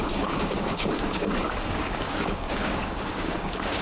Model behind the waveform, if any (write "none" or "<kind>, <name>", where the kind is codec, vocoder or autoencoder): codec, DAC